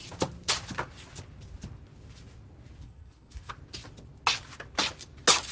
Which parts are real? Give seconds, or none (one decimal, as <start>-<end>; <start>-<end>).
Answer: 0.0-2.8; 3.5-5.5